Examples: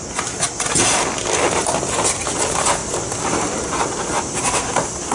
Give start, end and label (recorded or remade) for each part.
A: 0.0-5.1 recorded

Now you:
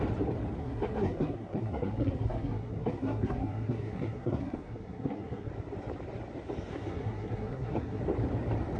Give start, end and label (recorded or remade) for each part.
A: 0.0-0.6 recorded; 0.6-5.5 remade; 5.5-6.7 recorded; 6.7-8.0 remade; 8.0-8.8 recorded